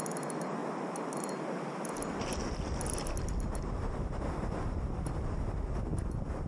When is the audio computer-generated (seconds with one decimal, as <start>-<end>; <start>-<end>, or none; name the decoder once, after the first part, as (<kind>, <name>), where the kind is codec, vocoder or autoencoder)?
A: 5.9-6.5 (vocoder, BigVGAN v2)